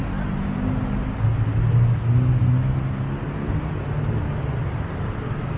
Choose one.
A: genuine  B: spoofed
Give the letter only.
A